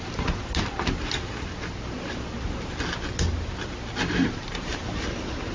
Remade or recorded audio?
recorded